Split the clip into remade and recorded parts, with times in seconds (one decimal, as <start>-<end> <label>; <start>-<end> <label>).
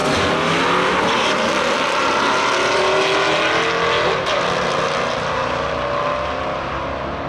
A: 0.0-7.3 recorded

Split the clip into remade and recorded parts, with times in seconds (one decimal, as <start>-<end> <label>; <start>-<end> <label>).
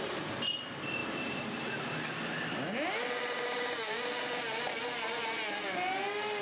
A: 0.0-1.0 recorded; 1.0-1.9 remade; 1.9-6.4 recorded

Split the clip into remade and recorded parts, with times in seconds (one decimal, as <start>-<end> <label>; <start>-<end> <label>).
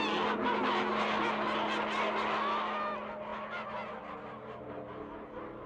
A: 0.0-5.7 recorded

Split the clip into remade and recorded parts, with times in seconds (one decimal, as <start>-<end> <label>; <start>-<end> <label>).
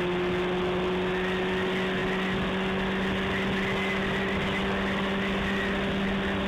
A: 0.0-6.5 recorded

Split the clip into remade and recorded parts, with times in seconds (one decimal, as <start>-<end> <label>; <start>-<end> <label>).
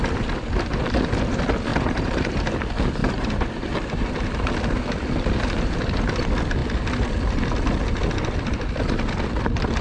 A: 0.0-1.7 recorded; 1.7-2.4 remade; 2.4-3.0 recorded; 3.0-4.5 remade; 4.5-9.8 recorded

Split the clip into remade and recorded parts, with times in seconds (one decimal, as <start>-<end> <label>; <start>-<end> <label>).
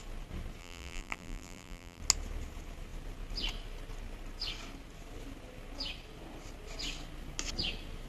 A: 0.0-0.6 recorded; 0.6-2.0 remade; 2.0-8.1 recorded